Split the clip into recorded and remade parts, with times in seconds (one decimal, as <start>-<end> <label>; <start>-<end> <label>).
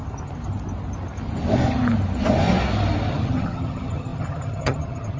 0.0-3.1 recorded; 3.1-5.2 remade